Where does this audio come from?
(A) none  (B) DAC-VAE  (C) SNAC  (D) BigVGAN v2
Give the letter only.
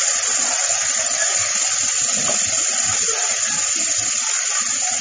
D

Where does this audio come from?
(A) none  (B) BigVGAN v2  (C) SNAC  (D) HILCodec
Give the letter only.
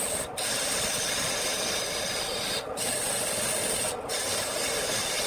A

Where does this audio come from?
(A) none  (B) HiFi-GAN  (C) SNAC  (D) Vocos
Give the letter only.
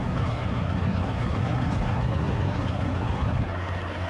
C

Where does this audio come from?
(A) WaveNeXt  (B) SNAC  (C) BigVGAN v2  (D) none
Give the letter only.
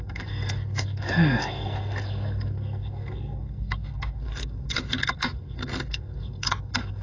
B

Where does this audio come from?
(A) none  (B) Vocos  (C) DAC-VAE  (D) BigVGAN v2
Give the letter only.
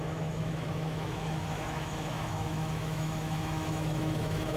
C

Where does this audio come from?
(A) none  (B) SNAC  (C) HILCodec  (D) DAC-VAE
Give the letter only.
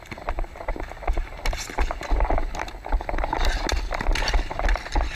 A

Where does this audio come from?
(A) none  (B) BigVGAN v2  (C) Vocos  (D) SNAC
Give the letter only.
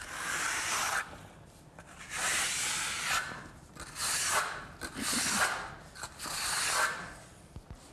A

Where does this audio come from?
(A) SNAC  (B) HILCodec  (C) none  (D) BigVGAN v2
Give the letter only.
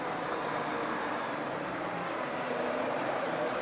D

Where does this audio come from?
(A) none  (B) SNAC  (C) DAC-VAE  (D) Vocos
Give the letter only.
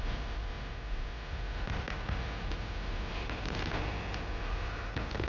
A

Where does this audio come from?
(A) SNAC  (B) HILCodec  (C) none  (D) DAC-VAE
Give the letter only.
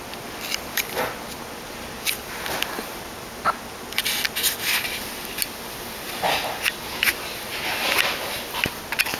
C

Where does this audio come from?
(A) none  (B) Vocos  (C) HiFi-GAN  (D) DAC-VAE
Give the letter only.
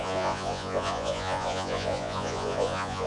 B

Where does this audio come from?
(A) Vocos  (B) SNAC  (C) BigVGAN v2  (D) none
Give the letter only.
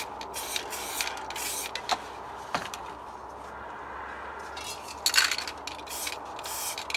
D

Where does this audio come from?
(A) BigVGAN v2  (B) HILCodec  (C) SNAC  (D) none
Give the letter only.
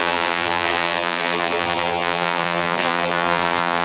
A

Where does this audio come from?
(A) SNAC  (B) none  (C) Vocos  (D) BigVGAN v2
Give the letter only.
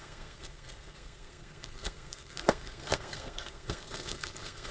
A